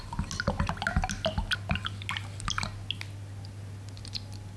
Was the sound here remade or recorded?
recorded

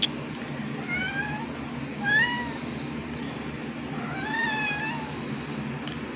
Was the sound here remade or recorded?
recorded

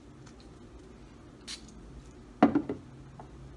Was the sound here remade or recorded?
recorded